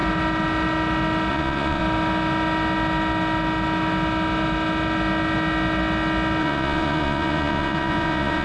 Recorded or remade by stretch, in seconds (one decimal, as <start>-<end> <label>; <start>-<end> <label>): 0.0-1.3 recorded; 1.3-1.8 remade; 1.8-6.4 recorded; 6.4-8.4 remade